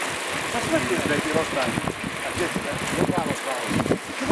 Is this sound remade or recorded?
recorded